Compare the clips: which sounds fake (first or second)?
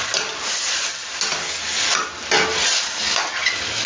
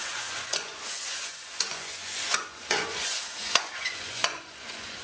second